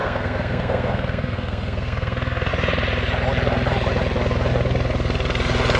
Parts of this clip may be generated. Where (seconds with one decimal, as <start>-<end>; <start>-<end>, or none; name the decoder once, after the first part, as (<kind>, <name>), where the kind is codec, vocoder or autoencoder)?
0.0-2.5 (codec, SNAC)